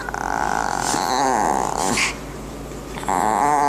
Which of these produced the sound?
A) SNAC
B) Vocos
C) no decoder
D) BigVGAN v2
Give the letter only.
C